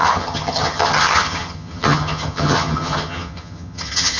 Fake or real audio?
fake